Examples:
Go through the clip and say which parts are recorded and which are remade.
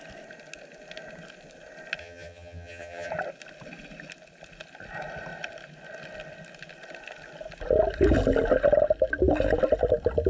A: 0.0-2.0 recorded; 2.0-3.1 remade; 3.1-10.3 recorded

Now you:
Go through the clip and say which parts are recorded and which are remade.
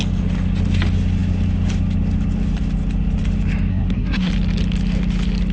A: 0.0-3.7 recorded; 3.7-4.3 remade; 4.3-5.5 recorded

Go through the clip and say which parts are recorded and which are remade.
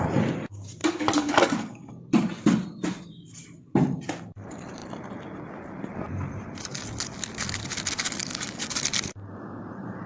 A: 0.0-0.8 recorded; 0.8-1.9 remade; 1.9-8.2 recorded; 8.2-8.7 remade; 8.7-10.1 recorded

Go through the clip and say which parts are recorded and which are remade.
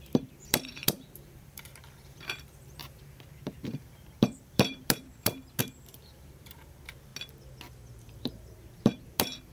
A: 0.0-7.1 remade; 7.1-8.0 recorded; 8.0-9.5 remade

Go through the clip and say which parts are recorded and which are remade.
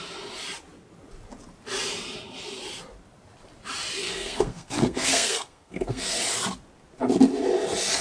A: 0.0-4.0 recorded; 4.0-6.2 remade; 6.2-8.0 recorded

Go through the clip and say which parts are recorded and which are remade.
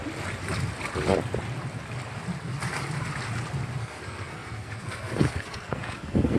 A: 0.0-3.8 recorded; 3.8-6.4 remade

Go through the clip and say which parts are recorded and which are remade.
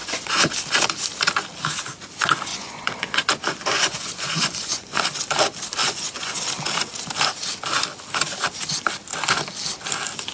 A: 0.0-0.5 remade; 0.5-2.5 recorded; 2.5-5.0 remade; 5.0-5.8 recorded; 5.8-6.3 remade; 6.3-10.3 recorded